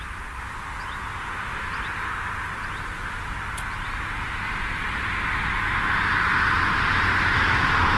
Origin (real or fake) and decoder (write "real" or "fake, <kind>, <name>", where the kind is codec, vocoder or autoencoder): real